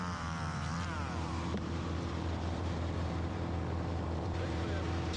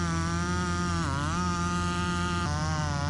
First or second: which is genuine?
second